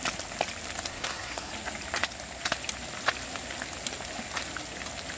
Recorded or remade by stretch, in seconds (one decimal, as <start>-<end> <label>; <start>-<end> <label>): 0.0-0.9 recorded; 0.9-1.5 remade; 1.5-5.2 recorded